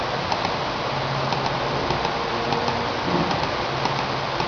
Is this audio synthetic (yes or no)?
no